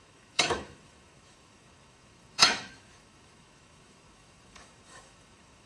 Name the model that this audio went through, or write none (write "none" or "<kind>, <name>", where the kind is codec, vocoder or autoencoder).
autoencoder, DAC-VAE